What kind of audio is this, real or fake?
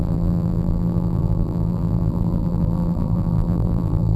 fake